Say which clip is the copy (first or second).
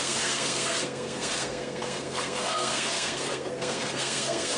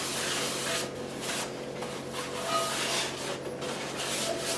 first